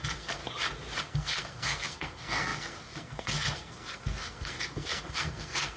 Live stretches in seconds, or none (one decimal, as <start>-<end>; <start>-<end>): 0.4-1.0